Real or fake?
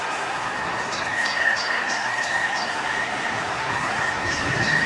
fake